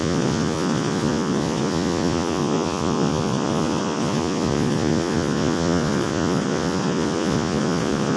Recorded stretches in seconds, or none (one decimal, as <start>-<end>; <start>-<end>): none